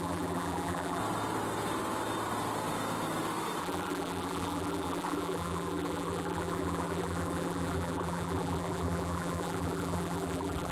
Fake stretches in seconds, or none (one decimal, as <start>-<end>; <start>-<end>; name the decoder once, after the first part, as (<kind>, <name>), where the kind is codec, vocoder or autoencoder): 0.0-1.0 (vocoder, BigVGAN v2); 3.6-10.7